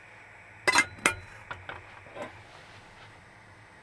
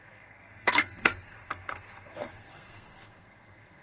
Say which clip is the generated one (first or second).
second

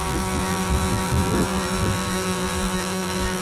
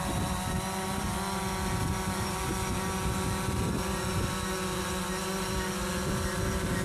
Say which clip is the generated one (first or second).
first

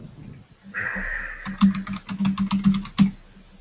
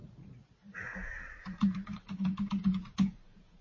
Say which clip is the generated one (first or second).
second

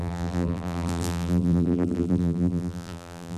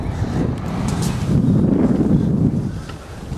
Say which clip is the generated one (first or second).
first